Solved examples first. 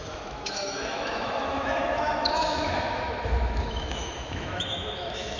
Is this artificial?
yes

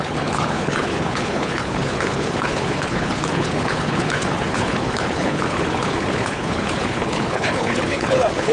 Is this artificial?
yes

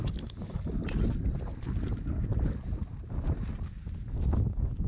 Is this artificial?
no